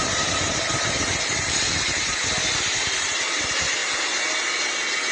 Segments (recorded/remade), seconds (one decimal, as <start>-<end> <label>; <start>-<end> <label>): 0.0-5.1 recorded